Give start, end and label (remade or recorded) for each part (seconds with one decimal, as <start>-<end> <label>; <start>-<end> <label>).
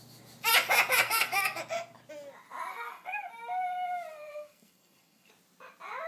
0.0-1.0 recorded; 1.0-1.6 remade; 1.6-2.7 recorded; 2.7-3.3 remade; 3.3-4.1 recorded; 4.1-5.3 remade; 5.3-6.1 recorded